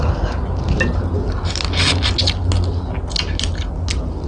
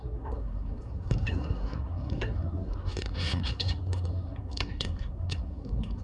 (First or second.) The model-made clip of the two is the second